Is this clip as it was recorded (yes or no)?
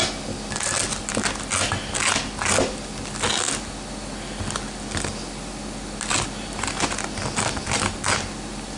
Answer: yes